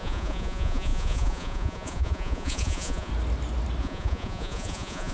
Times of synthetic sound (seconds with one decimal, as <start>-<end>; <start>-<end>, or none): 0.0-3.1; 3.8-5.1